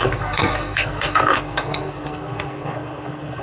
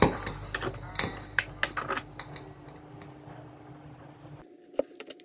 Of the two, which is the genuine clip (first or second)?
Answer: second